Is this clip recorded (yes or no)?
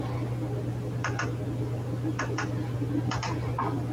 yes